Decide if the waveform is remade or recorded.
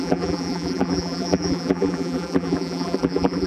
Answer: remade